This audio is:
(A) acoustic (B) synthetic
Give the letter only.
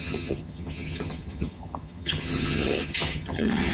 B